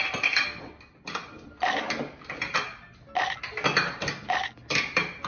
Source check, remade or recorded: recorded